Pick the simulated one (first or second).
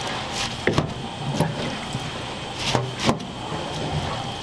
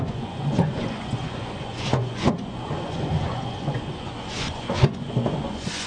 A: second